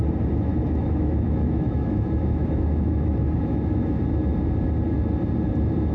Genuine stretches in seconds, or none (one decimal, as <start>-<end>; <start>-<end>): 0.0-0.5; 4.0-5.9

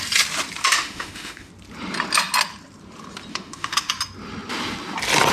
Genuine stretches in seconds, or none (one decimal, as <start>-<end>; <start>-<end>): 0.0-0.6; 1.5-3.3; 3.9-5.3

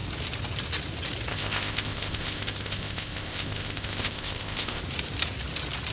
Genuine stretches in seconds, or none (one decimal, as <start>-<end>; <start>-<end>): 0.0-1.3; 4.8-5.9

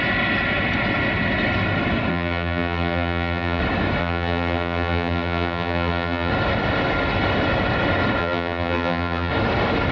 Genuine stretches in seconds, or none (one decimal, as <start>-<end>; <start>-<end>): 0.0-2.1; 3.6-4.0; 6.3-8.2; 9.3-9.9

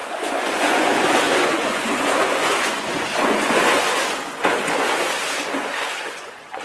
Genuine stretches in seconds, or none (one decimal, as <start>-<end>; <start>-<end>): none

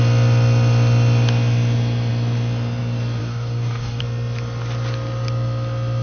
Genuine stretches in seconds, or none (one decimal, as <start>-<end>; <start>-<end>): 0.0-3.2; 4.0-6.0

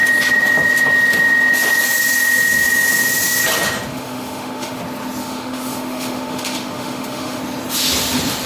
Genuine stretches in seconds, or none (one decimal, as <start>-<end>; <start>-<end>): 0.0-3.9; 4.8-5.2; 7.4-8.5

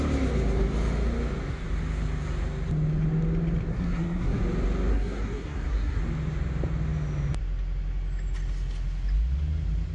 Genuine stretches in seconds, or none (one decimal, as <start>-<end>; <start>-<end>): 0.0-3.7; 4.4-4.9; 6.0-9.9